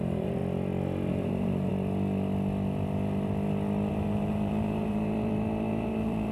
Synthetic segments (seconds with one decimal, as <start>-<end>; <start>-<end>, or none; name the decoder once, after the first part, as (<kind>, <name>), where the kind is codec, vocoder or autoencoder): 0.0-0.4 (vocoder, BigVGAN v2); 1.1-1.7; 3.9-6.3

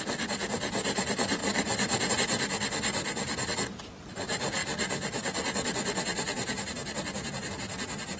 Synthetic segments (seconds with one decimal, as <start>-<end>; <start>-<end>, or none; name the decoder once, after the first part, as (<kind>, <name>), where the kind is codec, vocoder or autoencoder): none